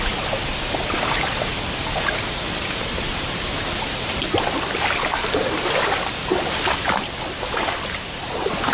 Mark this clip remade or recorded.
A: remade